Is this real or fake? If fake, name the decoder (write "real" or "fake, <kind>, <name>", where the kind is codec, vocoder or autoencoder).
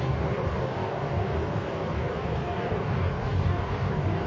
fake, codec, DAC